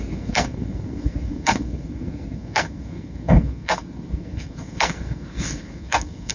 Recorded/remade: remade